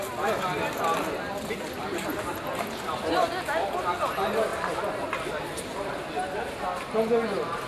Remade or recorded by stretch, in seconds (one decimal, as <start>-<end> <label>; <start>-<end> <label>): 0.0-7.7 recorded